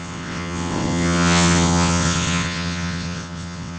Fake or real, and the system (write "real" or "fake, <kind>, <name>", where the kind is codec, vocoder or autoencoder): fake, vocoder, WaveNeXt